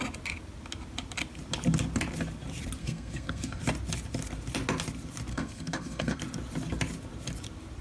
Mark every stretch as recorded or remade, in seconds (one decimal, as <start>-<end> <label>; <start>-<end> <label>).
0.0-2.8 recorded; 2.8-3.6 remade; 3.6-5.3 recorded; 5.3-6.2 remade; 6.2-7.8 recorded